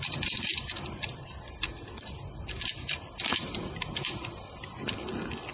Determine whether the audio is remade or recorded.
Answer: recorded